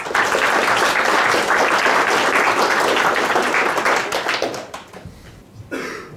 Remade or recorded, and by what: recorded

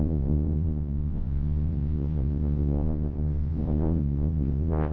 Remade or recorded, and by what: remade, vocoder, Vocos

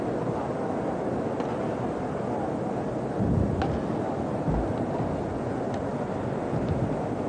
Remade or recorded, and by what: recorded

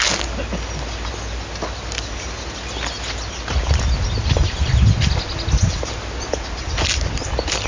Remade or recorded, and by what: recorded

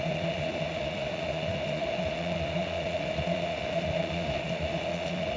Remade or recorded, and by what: remade, vocoder, Vocos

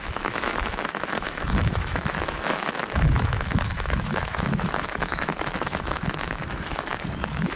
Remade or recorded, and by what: remade, autoencoder, DAC-VAE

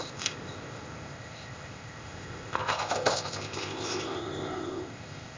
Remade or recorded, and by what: remade, codec, ZipCodec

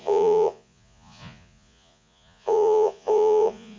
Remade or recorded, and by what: remade, vocoder, Vocos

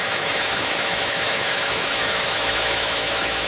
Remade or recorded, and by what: remade, autoencoder, DAC-VAE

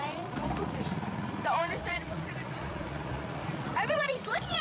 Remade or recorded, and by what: remade, vocoder, Vocos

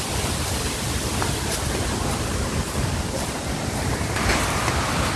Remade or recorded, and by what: recorded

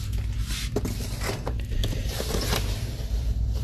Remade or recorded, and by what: recorded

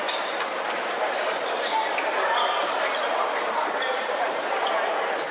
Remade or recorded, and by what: remade, vocoder, BigVGAN v2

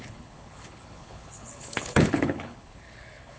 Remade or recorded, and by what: remade, codec, HILCodec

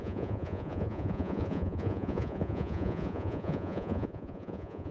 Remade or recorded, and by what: remade, vocoder, Vocos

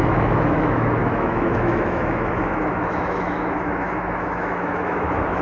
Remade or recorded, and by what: remade, autoencoder, DAC-VAE